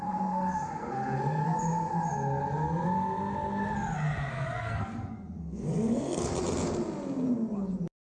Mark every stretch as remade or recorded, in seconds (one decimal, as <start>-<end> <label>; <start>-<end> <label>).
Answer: 0.0-1.4 remade; 1.4-4.3 recorded; 4.3-6.3 remade; 6.3-8.0 recorded